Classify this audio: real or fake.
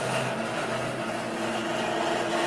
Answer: real